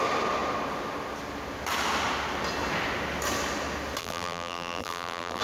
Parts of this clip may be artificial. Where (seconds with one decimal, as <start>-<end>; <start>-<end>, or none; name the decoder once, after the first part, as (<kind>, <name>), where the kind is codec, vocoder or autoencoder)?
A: 4.0-5.4 (vocoder, BigVGAN v2)